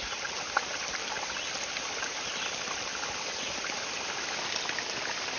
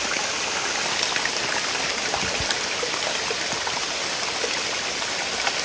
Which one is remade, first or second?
first